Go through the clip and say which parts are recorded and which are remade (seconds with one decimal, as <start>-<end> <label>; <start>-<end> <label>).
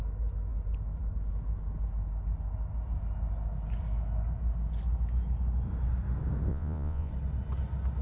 0.0-6.5 recorded; 6.5-7.1 remade; 7.1-8.0 recorded